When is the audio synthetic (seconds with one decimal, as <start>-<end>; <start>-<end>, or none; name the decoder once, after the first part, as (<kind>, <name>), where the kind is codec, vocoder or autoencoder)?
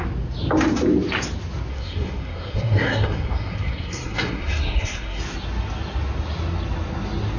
1.7-5.2 (codec, SNAC)